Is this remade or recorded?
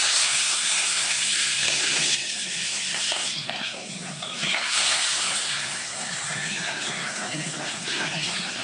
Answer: remade